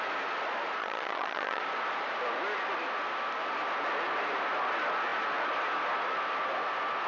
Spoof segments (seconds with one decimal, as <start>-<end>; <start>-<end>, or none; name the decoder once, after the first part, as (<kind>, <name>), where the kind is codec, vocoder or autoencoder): 0.8-1.6 (vocoder, HiFi-GAN)